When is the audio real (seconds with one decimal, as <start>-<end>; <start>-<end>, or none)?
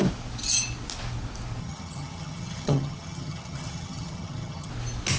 0.0-1.6; 4.7-5.2